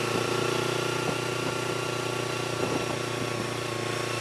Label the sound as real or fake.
real